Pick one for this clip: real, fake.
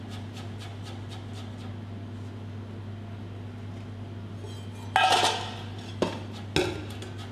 real